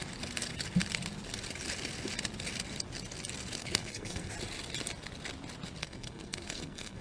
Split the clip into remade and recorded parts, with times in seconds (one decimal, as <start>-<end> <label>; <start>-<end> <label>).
0.0-3.6 recorded; 3.6-4.3 remade; 4.3-5.8 recorded; 5.8-7.0 remade